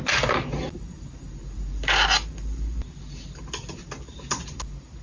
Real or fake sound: real